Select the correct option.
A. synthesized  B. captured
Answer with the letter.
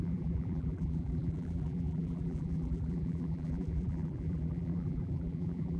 A